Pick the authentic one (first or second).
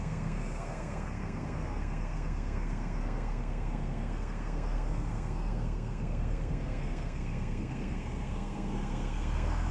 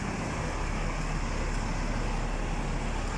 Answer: second